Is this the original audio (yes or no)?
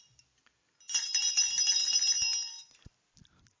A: yes